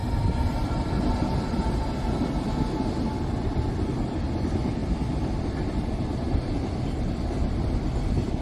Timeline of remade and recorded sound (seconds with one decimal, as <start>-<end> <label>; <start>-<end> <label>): 0.0-8.4 recorded